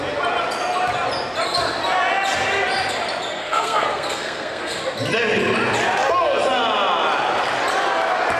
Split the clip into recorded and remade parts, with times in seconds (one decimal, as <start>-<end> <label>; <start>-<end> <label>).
0.0-3.4 recorded; 3.4-4.8 remade; 4.8-8.4 recorded